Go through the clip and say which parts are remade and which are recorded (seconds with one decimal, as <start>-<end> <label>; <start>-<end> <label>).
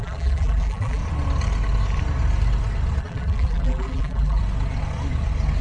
0.0-1.0 remade; 1.0-3.0 recorded; 3.0-4.4 remade; 4.4-5.6 recorded